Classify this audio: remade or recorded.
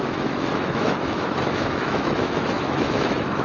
remade